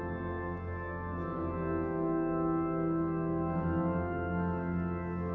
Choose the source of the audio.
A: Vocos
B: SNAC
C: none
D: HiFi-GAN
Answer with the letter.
C